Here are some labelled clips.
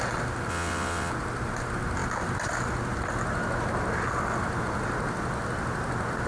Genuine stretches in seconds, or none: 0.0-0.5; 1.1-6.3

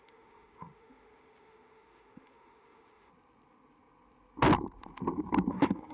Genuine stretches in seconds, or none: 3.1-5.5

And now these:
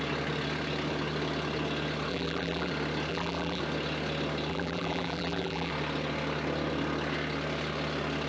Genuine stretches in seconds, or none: 0.0-2.1; 2.7-3.1; 3.6-4.5; 5.7-8.3

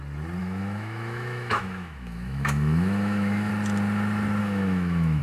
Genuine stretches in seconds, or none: 0.0-0.4; 3.5-4.4

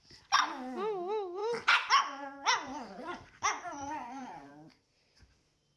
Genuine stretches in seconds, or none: 0.0-1.4; 4.5-5.8

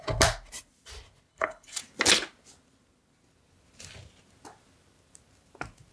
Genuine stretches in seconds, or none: 0.0-1.3; 1.8-5.9